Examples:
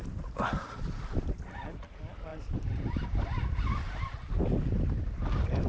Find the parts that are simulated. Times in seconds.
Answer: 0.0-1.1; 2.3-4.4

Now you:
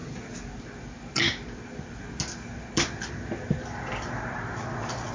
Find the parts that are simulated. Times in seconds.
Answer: none